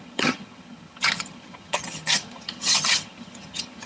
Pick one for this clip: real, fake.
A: fake